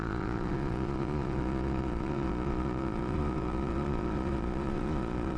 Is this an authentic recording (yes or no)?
no